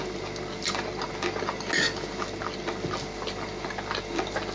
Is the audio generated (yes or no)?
no